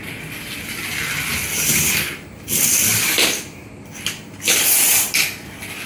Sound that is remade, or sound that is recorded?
recorded